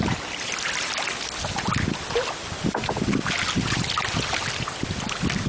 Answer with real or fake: real